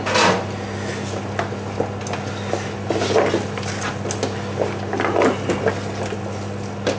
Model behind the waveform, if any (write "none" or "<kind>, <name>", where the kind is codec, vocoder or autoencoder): none